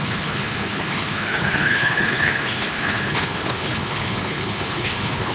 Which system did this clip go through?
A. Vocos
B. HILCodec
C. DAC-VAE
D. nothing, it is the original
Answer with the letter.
B